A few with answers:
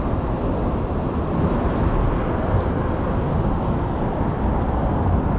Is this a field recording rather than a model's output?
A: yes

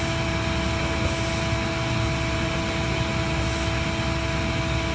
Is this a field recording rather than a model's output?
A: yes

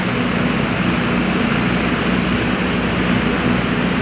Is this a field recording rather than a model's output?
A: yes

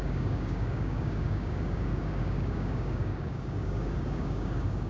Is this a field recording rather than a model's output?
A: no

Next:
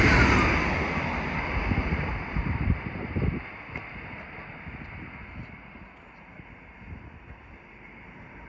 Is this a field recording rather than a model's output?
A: yes